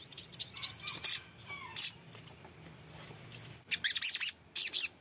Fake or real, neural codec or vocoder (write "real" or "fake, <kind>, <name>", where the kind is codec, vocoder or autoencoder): real